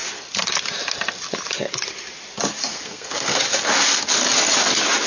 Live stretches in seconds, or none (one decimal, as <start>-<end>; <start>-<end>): 0.0-2.7; 3.4-5.1